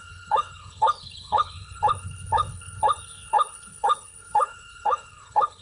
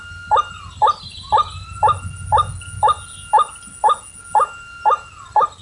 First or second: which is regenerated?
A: first